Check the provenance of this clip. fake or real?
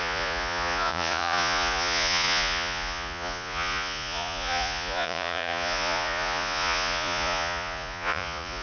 fake